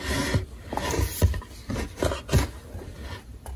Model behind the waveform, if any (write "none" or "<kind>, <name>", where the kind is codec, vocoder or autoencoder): none